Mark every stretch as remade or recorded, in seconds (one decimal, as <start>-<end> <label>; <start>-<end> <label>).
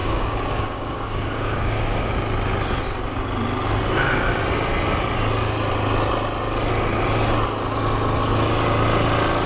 0.0-2.1 remade; 2.1-9.5 recorded